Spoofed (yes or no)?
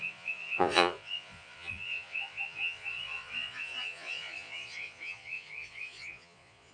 yes